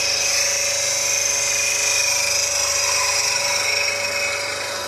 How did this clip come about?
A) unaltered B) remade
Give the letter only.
A